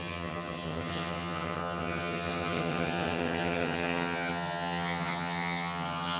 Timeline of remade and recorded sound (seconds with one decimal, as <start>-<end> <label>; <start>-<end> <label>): 0.0-6.2 remade